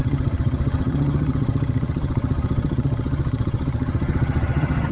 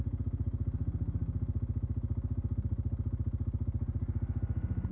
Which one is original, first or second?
second